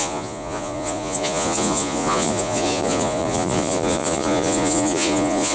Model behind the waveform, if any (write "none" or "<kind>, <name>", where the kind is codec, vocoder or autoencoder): vocoder, Vocos